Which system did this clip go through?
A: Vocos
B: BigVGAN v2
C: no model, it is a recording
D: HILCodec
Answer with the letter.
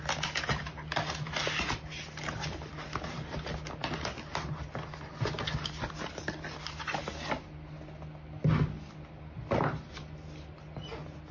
C